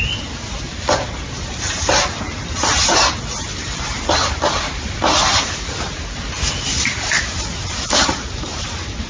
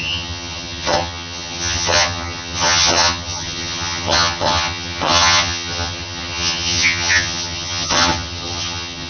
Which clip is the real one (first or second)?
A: first